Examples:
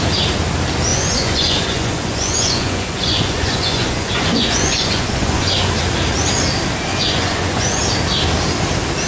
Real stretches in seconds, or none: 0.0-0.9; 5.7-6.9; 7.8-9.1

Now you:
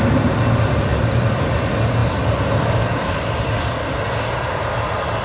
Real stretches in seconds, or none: 0.0-0.9; 1.5-2.0; 3.2-5.2

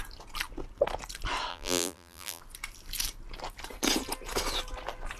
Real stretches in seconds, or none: 0.0-1.5; 2.4-5.2